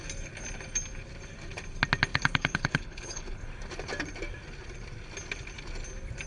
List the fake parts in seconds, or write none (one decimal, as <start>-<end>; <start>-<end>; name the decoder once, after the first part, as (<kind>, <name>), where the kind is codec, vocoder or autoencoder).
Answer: 2.1-3.4 (codec, HILCodec)